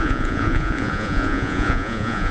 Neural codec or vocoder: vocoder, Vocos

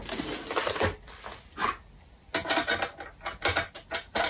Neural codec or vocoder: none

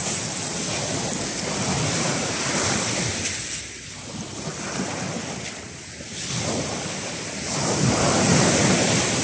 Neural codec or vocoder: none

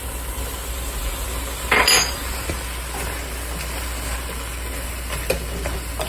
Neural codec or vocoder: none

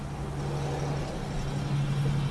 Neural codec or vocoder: none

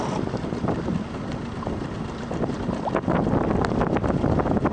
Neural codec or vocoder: none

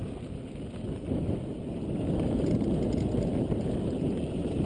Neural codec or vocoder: none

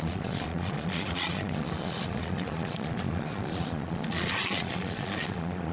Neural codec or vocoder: vocoder, Vocos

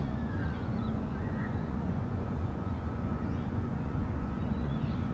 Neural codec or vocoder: vocoder, Vocos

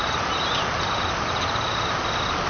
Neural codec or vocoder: none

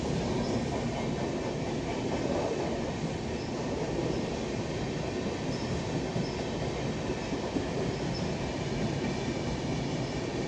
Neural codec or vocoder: none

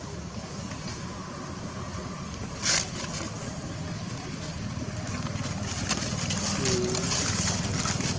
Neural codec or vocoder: none